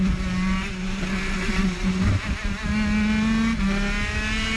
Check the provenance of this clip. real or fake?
real